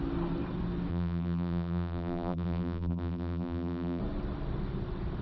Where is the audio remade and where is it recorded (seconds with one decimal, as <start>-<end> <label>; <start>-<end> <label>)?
0.0-0.9 recorded; 0.9-4.0 remade; 4.0-5.2 recorded

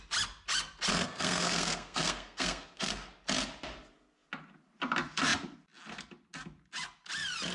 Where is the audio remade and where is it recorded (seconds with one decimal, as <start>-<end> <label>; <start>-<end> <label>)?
0.0-0.9 recorded; 0.9-3.1 remade; 3.1-7.5 recorded

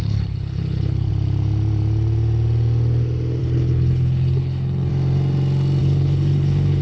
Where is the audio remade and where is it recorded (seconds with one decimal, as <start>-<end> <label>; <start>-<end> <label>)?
0.0-1.1 remade; 1.1-3.4 recorded; 3.4-4.9 remade; 4.9-5.8 recorded; 5.8-6.8 remade

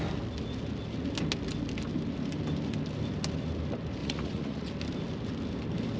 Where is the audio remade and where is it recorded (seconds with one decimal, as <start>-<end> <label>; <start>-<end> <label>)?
0.0-4.0 recorded; 4.0-4.7 remade; 4.7-6.0 recorded

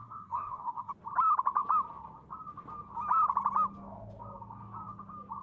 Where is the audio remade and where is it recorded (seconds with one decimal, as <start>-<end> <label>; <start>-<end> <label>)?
0.0-0.9 remade; 0.9-5.4 recorded

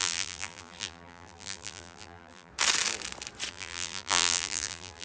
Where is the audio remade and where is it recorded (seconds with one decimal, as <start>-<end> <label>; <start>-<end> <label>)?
0.0-2.5 remade; 2.5-3.5 recorded; 3.5-5.0 remade

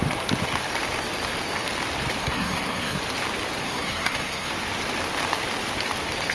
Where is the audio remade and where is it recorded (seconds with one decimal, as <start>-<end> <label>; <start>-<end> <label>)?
0.0-2.2 recorded; 2.2-3.0 remade; 3.0-3.6 recorded; 3.6-4.5 remade; 4.5-6.3 recorded

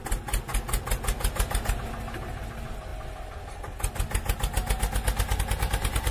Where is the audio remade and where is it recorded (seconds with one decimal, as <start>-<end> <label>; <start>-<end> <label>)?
0.0-6.1 recorded